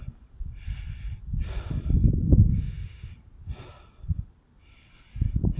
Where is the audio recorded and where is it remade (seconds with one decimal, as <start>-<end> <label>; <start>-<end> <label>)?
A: 0.0-2.2 recorded; 2.2-3.1 remade; 3.1-5.6 recorded